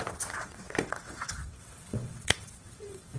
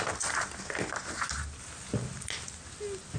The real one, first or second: second